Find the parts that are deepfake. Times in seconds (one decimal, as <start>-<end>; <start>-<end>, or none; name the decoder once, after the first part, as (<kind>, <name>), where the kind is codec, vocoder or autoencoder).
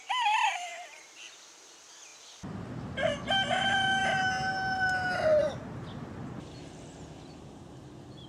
0.7-1.2 (vocoder, BigVGAN v2)